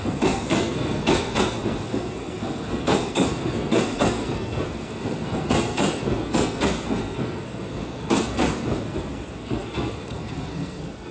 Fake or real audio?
fake